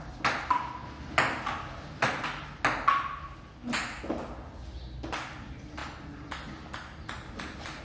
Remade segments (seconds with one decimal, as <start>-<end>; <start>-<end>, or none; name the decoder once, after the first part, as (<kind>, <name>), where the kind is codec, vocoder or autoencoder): none